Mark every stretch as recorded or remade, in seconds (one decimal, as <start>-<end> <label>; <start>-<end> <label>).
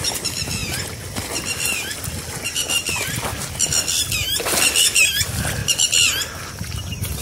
0.0-7.2 recorded